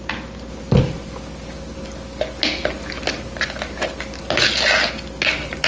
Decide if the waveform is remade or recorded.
recorded